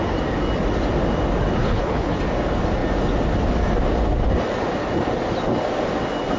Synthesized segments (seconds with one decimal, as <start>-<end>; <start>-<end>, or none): 1.6-2.2